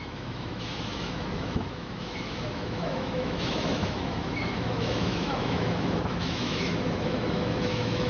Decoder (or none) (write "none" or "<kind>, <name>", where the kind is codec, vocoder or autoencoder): autoencoder, DAC-VAE